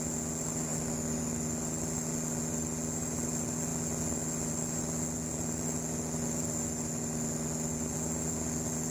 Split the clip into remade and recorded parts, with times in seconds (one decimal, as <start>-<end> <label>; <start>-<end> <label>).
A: 0.0-8.9 recorded